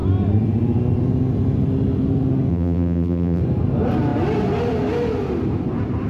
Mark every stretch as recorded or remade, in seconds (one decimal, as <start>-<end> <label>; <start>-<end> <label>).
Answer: 0.0-2.5 recorded; 2.5-3.4 remade; 3.4-6.1 recorded